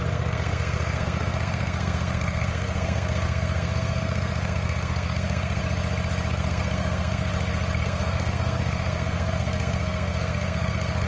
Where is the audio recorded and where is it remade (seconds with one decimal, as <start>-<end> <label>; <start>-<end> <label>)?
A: 0.0-5.6 remade; 5.6-6.3 recorded; 6.3-7.3 remade; 7.3-7.8 recorded; 7.8-11.1 remade